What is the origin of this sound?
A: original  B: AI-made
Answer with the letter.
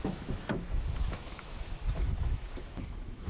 B